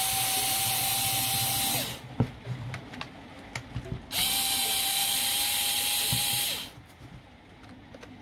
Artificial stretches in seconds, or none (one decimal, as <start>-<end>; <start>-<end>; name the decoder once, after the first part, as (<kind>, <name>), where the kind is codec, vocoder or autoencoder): 5.0-6.4 (vocoder, BigVGAN v2)